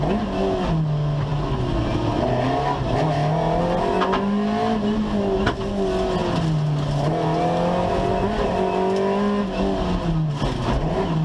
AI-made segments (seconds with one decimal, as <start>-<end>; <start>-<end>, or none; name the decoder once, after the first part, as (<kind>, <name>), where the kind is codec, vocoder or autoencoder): none